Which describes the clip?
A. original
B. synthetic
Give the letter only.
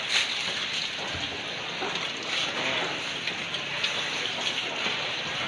A